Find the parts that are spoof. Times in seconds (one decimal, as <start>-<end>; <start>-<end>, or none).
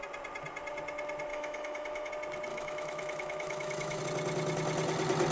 1.3-2.1; 2.5-4.0